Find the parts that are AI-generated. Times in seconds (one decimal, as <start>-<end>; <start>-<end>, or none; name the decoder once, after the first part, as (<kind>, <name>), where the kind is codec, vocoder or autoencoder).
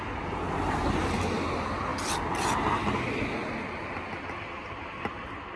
4.6-5.6 (vocoder, BigVGAN v2)